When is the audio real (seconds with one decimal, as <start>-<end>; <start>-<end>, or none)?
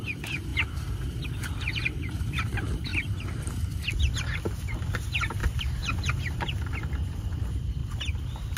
2.9-4.9; 7.8-8.6